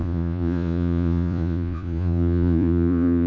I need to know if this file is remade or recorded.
remade